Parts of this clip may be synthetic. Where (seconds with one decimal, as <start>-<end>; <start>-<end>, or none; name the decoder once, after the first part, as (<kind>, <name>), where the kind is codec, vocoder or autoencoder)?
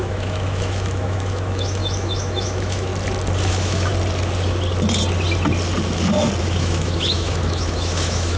0.0-2.9 (autoencoder, DAC-VAE); 3.5-3.9; 6.4-8.4